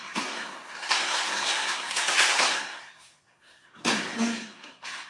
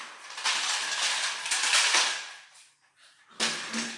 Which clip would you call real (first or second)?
second